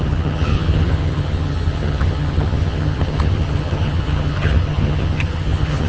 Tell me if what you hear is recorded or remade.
remade